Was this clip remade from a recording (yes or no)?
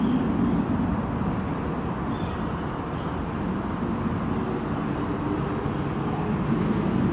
no